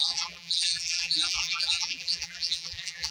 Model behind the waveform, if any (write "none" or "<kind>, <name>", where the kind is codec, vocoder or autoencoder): vocoder, BigVGAN v2